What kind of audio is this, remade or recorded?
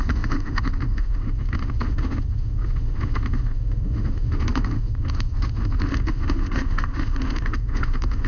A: remade